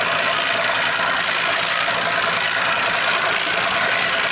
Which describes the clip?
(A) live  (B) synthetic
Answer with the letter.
A